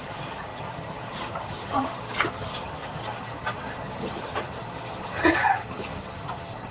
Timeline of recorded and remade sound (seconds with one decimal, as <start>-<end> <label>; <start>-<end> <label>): 0.0-6.7 remade

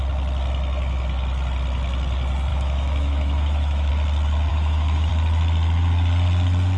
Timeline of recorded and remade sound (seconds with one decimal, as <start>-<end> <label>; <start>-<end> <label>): 0.0-2.5 recorded; 2.5-3.9 remade; 3.9-4.5 recorded; 4.5-5.1 remade; 5.1-6.8 recorded